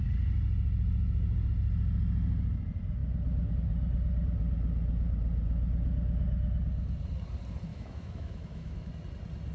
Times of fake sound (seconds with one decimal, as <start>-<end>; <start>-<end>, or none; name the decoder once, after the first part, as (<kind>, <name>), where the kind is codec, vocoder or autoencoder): 7.7-8.9 (autoencoder, DAC-VAE)